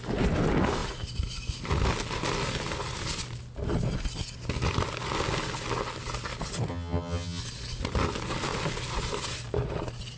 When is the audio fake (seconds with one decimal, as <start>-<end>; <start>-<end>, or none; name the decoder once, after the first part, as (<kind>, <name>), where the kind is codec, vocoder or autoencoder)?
6.7-7.4 (vocoder, HiFi-GAN)

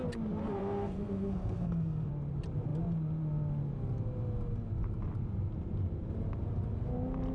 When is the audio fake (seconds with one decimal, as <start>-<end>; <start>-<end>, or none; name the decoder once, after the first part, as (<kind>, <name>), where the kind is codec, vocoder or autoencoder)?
0.4-2.1 (codec, SNAC)

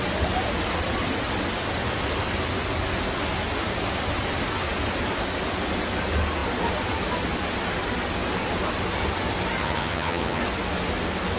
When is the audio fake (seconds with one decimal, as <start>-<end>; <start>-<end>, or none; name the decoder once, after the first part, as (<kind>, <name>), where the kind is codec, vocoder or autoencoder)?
9.6-10.4 (vocoder, HiFi-GAN)

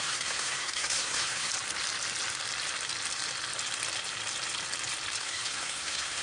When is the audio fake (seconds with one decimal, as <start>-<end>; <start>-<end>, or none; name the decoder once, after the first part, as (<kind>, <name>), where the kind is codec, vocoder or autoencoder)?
0.0-1.5 (codec, SNAC); 5.2-6.2

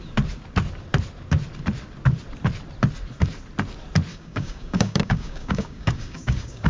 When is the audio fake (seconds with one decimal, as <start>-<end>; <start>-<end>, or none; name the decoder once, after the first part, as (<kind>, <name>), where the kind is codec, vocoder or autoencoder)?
4.1-6.7 (codec, DAC)